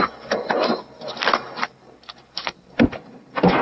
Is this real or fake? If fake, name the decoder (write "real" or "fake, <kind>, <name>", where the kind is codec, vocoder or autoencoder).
real